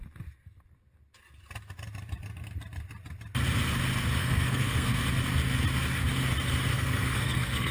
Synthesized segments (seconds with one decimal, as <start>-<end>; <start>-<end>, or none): 4.2-5.0; 6.7-7.7